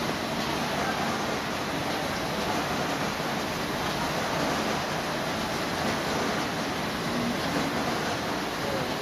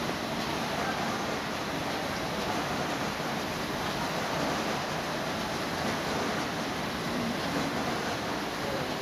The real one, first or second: first